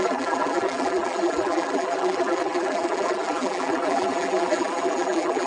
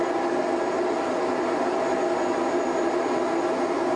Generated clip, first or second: first